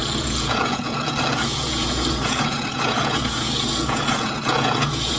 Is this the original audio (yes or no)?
no